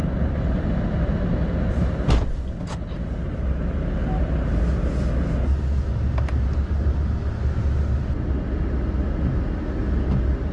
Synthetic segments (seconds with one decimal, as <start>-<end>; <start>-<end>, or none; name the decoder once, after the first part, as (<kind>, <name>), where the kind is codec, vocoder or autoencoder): none

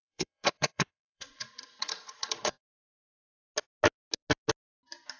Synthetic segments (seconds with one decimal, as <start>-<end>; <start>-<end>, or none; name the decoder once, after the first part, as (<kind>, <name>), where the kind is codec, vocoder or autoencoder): 0.0-2.6 (vocoder, Vocos)

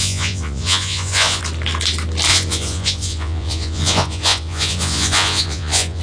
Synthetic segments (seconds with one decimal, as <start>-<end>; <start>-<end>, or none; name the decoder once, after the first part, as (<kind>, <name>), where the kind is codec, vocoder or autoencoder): 0.0-1.4 (vocoder, Vocos); 2.3-6.0

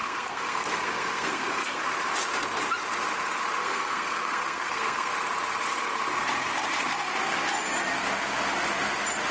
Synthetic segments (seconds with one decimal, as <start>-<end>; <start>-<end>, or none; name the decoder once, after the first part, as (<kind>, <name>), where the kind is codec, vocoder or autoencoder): 0.0-1.8 (codec, SNAC); 3.6-5.1

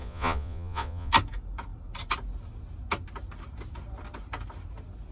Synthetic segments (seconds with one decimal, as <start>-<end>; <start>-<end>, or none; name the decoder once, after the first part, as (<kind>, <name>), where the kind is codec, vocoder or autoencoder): 0.0-1.1 (vocoder, Vocos)

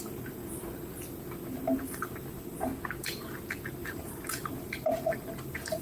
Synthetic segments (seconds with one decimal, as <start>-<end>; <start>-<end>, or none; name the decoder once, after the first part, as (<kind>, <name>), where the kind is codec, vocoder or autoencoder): 0.0-0.4 (vocoder, BigVGAN v2); 1.8-2.7; 3.7-5.8

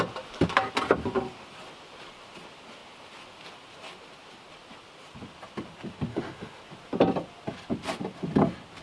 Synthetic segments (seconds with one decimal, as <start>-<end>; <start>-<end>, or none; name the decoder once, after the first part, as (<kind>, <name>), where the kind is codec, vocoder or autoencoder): 6.1-6.6 (autoencoder, DAC-VAE)